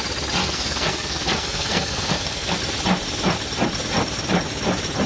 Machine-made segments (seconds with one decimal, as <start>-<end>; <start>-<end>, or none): 0.4-2.6